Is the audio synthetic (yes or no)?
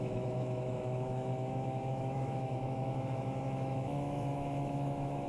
yes